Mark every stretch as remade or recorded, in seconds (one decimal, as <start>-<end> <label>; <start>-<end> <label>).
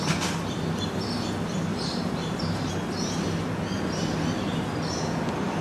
0.0-1.7 recorded; 1.7-2.7 remade; 2.7-5.6 recorded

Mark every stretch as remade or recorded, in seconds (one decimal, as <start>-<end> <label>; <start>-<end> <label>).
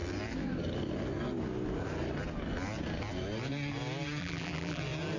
0.0-4.2 recorded; 4.2-4.8 remade; 4.8-5.2 recorded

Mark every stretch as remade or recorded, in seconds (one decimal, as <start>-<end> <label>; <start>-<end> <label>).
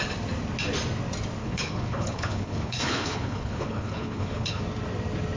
0.0-1.4 recorded; 1.4-4.6 remade; 4.6-5.4 recorded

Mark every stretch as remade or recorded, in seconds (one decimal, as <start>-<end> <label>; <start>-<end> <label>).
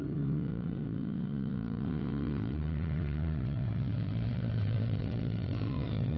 0.0-6.2 remade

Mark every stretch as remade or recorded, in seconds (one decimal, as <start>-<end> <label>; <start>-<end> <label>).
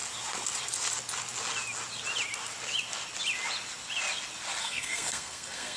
0.0-4.6 recorded; 4.6-5.8 remade